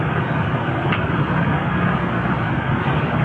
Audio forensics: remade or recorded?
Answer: remade